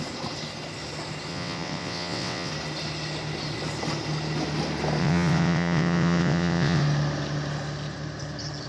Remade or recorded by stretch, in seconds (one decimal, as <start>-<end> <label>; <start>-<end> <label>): 0.0-1.3 recorded; 1.3-2.5 remade; 2.5-5.0 recorded; 5.0-6.8 remade; 6.8-8.7 recorded